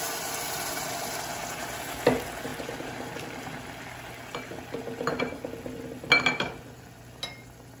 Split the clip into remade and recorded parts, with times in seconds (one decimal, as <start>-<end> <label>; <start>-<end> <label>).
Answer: 0.0-7.8 recorded